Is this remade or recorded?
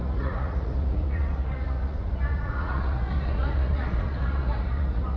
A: remade